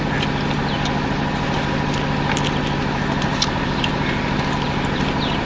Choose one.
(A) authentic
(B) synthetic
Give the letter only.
A